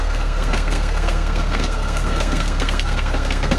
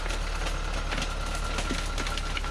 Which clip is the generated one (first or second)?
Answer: first